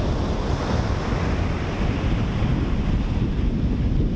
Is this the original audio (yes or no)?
yes